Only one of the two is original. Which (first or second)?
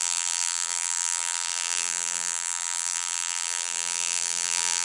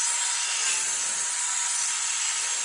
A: second